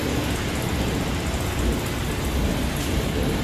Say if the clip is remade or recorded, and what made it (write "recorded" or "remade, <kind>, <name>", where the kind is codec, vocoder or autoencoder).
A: recorded